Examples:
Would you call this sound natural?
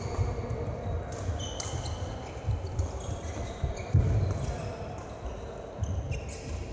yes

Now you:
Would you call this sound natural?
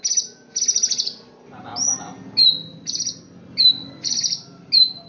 yes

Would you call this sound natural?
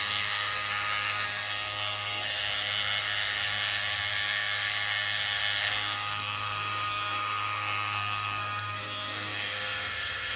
no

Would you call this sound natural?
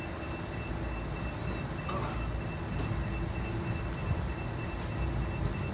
yes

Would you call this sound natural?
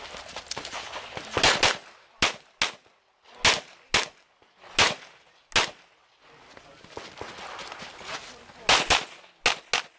yes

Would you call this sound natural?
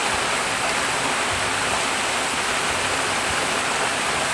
yes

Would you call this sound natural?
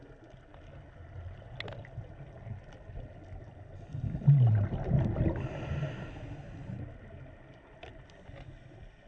yes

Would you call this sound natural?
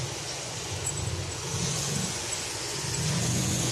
no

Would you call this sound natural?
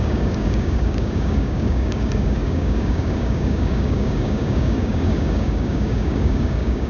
no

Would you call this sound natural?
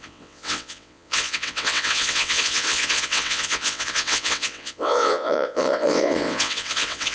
no